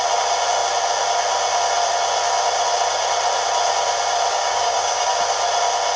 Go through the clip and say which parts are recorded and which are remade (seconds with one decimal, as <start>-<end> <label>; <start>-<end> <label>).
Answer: 0.0-4.3 recorded; 4.3-5.2 remade; 5.2-6.0 recorded